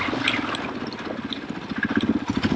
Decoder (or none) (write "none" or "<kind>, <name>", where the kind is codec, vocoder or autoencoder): none